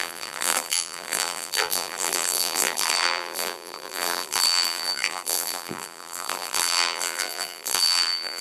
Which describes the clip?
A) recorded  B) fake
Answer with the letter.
B